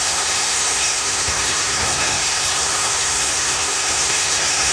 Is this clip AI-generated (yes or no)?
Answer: yes